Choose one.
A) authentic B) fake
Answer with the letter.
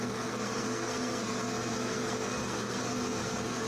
B